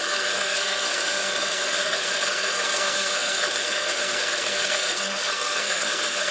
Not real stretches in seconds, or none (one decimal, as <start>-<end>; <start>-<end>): 0.0-6.3